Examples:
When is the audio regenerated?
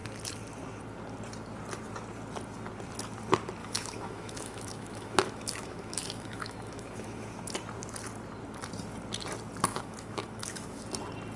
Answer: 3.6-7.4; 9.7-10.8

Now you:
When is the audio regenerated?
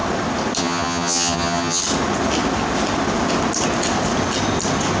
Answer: 0.6-1.8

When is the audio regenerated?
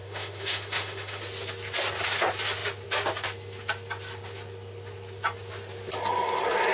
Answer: 0.0-1.2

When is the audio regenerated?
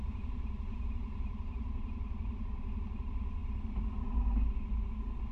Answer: 0.0-3.4